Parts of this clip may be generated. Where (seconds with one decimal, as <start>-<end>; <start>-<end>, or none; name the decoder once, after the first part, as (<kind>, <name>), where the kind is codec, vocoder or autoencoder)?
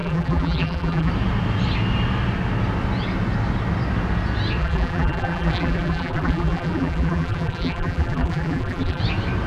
0.0-1.1 (vocoder, BigVGAN v2); 4.6-9.0